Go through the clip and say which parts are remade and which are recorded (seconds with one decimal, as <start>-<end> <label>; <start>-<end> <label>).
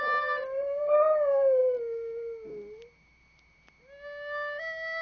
0.0-5.0 recorded